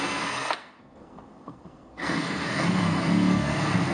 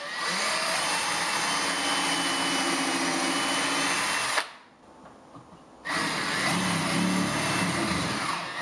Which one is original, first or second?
second